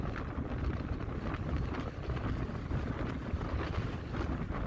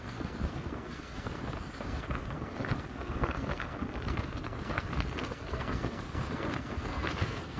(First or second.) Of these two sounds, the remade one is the second